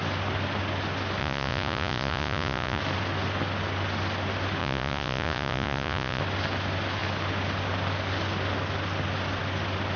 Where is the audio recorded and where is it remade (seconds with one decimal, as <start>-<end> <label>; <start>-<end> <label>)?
0.0-1.2 recorded; 1.2-2.8 remade; 2.8-4.6 recorded; 4.6-6.2 remade; 6.2-10.0 recorded